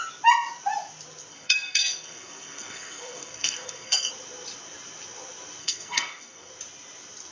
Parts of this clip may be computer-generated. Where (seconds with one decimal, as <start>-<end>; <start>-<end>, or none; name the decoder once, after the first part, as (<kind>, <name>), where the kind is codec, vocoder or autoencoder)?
1.3-4.1 (codec, SNAC); 5.6-6.5